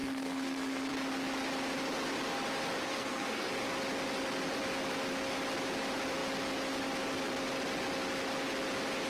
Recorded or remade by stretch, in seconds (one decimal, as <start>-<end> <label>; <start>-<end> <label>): 0.0-0.9 remade; 0.9-2.8 recorded; 2.8-3.5 remade; 3.5-9.1 recorded